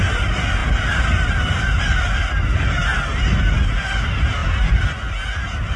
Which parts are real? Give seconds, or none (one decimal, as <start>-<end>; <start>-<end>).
0.0-5.8